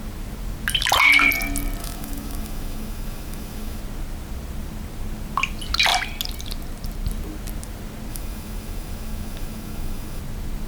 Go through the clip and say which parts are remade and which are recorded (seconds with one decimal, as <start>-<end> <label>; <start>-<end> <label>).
0.0-1.8 recorded; 1.8-3.8 remade; 3.8-8.1 recorded; 8.1-10.2 remade; 10.2-10.7 recorded

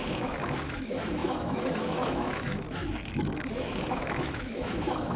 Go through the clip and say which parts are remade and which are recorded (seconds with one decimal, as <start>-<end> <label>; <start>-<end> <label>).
0.0-5.2 remade

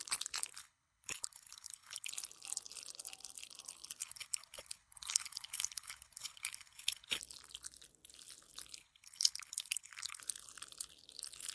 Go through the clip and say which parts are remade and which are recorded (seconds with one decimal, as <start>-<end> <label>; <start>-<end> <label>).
0.0-0.5 recorded; 0.5-2.1 remade; 2.1-4.0 recorded; 4.0-7.2 remade; 7.2-8.8 recorded; 8.8-10.2 remade; 10.2-11.5 recorded

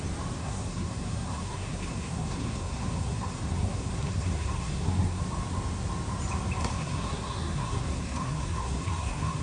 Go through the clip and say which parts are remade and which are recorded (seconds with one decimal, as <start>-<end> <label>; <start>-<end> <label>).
0.0-0.4 recorded; 0.4-5.2 remade; 5.2-6.6 recorded; 6.6-9.4 remade

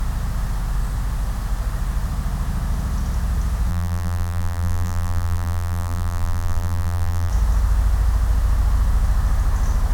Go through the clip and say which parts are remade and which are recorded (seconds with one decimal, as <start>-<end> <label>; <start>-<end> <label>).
0.0-3.7 recorded; 3.7-7.3 remade; 7.3-9.9 recorded

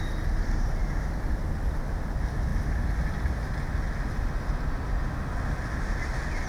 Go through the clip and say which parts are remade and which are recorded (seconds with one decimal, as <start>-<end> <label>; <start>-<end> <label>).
0.0-6.5 recorded

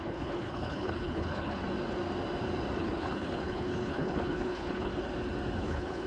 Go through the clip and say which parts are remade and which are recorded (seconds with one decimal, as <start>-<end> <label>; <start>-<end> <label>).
0.0-1.6 remade; 1.6-2.8 recorded; 2.8-4.9 remade; 4.9-5.6 recorded; 5.6-6.1 remade

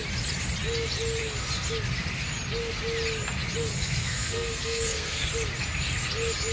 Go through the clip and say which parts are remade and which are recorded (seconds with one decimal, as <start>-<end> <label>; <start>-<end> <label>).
0.0-3.6 recorded; 3.6-5.3 remade; 5.3-6.5 recorded